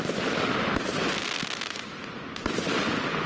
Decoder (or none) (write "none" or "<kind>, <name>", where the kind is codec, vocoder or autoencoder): none